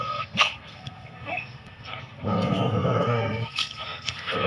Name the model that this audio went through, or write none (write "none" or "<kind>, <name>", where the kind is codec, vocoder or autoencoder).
codec, SNAC